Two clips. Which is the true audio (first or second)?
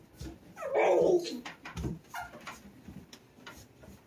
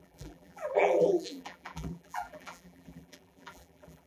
first